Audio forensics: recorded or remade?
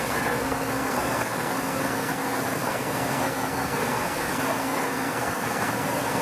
remade